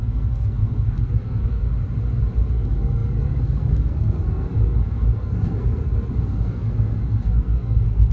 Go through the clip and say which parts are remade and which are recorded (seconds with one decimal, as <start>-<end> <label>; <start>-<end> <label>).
0.0-1.7 remade; 1.7-2.5 recorded; 2.5-8.1 remade